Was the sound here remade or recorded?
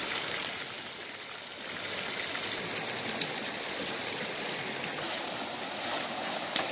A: recorded